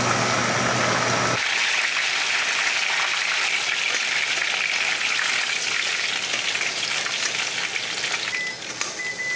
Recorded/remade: recorded